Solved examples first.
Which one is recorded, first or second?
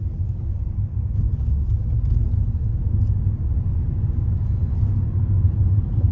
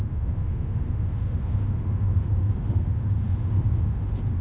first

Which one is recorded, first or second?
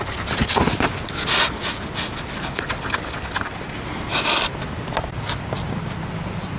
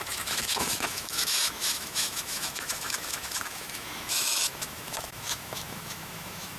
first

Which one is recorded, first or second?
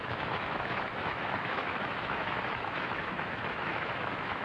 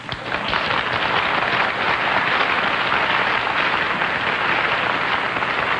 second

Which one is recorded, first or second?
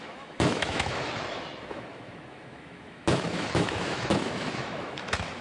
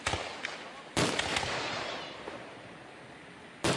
second